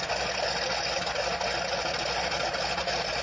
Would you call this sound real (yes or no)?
yes